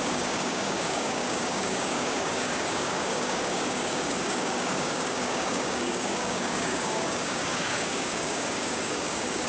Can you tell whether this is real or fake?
fake